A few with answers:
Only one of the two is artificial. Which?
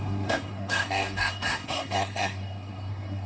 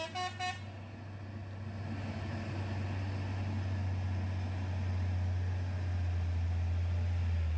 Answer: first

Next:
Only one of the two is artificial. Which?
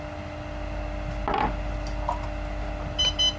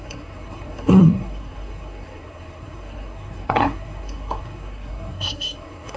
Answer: second